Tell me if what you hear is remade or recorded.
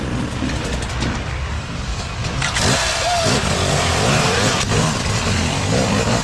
remade